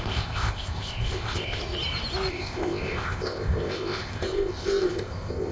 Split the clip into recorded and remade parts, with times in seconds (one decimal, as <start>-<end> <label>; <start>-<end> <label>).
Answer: 0.0-1.6 remade; 1.6-2.3 recorded; 2.3-5.5 remade